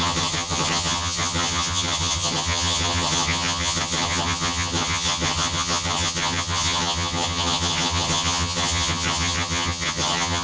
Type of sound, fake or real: fake